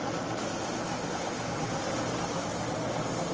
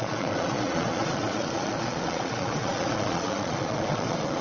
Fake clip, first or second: second